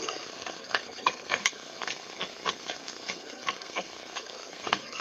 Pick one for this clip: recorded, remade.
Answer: remade